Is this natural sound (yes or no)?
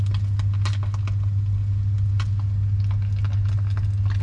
yes